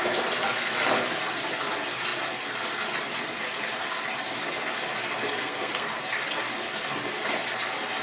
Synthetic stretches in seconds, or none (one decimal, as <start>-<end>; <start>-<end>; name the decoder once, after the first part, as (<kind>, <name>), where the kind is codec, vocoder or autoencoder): 5.4-5.9 (codec, SNAC)